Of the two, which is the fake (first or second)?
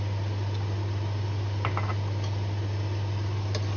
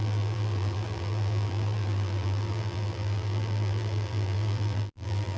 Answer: second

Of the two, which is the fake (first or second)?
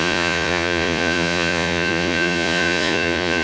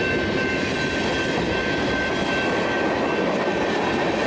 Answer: first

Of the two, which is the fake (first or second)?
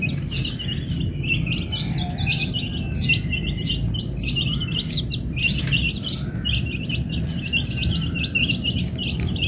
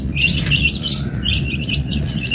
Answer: second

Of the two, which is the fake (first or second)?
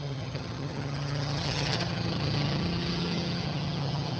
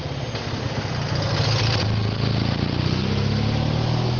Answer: first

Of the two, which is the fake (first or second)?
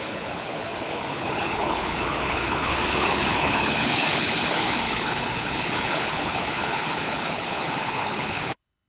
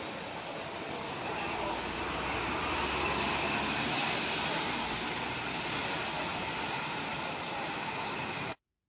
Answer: first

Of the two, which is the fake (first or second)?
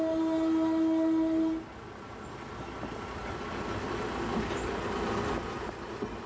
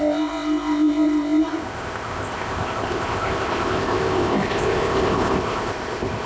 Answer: second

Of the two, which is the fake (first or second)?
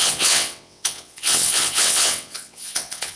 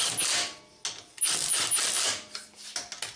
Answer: first